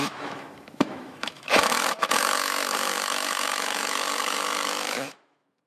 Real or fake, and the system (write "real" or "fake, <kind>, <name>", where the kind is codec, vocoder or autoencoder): fake, autoencoder, DAC-VAE